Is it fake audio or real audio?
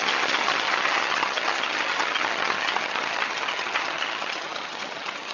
fake